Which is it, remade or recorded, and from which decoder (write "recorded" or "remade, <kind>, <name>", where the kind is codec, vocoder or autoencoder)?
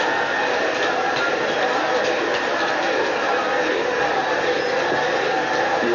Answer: recorded